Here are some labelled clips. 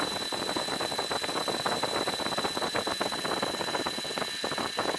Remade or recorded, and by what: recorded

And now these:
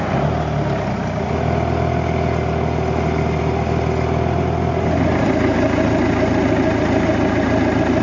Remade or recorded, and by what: recorded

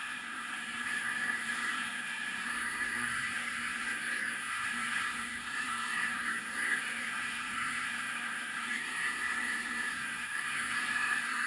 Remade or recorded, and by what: remade, codec, SNAC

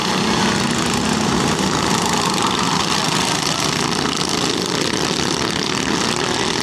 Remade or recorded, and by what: recorded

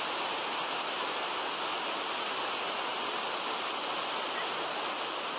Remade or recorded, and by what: recorded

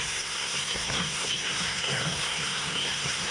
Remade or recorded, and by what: remade, codec, SNAC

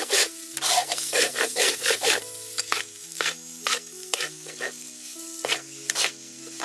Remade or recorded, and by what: remade, codec, SNAC